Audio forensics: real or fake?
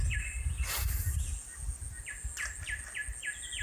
real